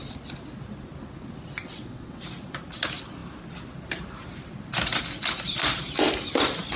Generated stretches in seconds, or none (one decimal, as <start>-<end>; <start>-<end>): 1.6-2.2